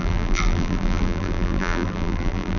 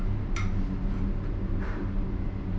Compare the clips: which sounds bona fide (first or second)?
second